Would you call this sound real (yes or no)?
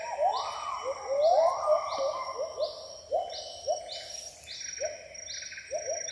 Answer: yes